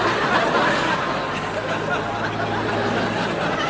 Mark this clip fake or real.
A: real